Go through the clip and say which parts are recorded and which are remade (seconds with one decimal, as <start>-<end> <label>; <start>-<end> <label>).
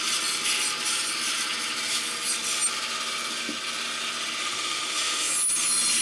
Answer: 0.0-4.4 recorded; 4.4-5.3 remade; 5.3-6.0 recorded